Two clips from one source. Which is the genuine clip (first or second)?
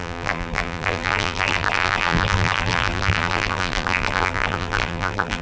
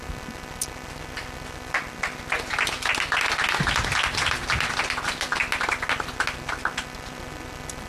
second